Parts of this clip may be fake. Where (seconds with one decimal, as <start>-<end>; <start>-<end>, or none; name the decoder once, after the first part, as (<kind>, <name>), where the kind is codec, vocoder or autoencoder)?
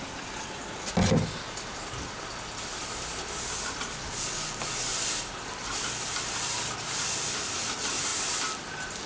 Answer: none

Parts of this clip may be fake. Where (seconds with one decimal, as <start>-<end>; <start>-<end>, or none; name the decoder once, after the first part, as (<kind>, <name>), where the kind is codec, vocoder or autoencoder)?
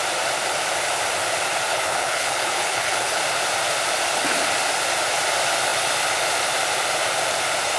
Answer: 1.7-3.2 (codec, HILCodec)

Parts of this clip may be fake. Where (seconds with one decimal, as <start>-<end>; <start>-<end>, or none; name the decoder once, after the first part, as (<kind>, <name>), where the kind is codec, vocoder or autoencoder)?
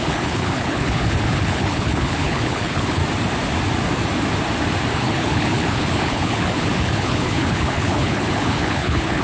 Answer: 0.0-3.0 (codec, HILCodec); 4.9-9.2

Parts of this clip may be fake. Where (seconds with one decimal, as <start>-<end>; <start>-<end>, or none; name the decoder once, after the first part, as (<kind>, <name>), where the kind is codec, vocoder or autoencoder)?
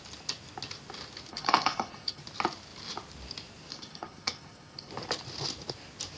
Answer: 1.3-2.2 (codec, HILCodec); 3.7-4.9